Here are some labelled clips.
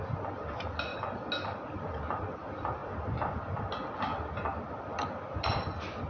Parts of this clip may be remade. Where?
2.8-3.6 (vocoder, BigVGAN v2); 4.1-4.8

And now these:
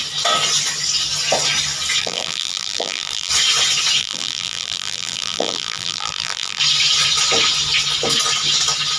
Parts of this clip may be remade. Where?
2.0-3.3 (vocoder, BigVGAN v2); 4.0-6.6

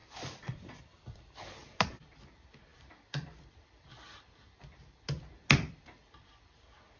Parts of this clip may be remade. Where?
0.0-0.7 (vocoder, BigVGAN v2); 1.6-2.2; 2.7-7.0

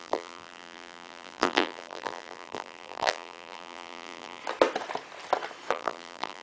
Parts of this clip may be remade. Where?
0.0-4.4 (vocoder, BigVGAN v2); 5.7-6.4

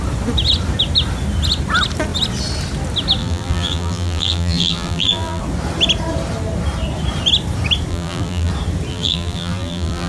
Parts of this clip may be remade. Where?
3.2-5.4 (vocoder, BigVGAN v2); 7.9-8.5; 8.9-10.1

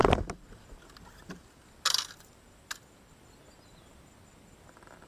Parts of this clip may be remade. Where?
none

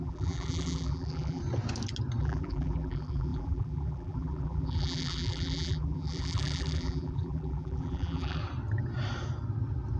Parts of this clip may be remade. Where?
0.0-1.4 (vocoder, BigVGAN v2); 2.2-8.4